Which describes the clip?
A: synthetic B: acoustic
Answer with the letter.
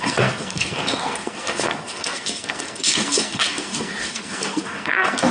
A